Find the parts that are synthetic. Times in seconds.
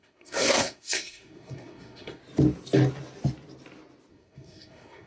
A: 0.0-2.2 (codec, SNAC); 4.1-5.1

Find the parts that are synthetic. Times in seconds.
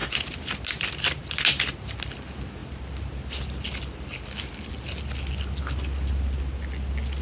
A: none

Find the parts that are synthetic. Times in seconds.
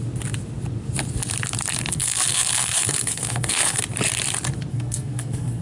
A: 2.0-3.8 (codec, SNAC); 4.7-5.6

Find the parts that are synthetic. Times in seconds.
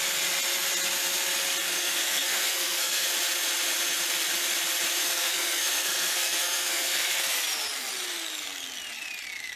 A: 1.6-3.1 (codec, SNAC); 5.0-7.2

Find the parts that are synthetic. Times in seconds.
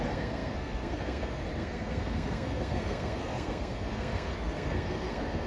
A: 0.0-5.5 (codec, SNAC)